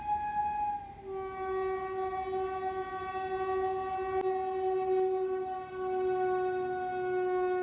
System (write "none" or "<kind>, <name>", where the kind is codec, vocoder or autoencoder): none